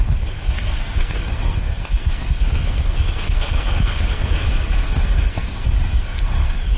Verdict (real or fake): fake